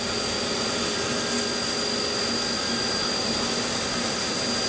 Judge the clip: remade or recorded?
recorded